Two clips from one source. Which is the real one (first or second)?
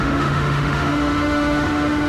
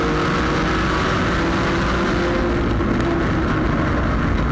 second